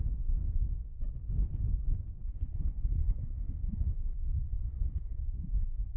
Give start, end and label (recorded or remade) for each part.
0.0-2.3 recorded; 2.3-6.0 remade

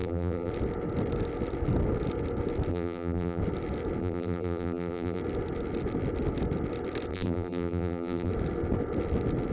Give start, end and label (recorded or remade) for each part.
0.0-0.5 remade; 0.5-2.7 recorded; 2.7-3.4 remade; 3.4-4.0 recorded; 4.0-5.2 remade; 5.2-7.1 recorded; 7.1-8.3 remade; 8.3-9.5 recorded

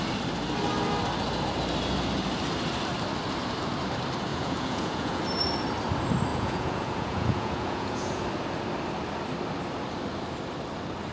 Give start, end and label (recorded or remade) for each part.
0.0-4.3 recorded; 4.3-5.2 remade; 5.2-6.3 recorded; 6.3-8.2 remade; 8.2-11.1 recorded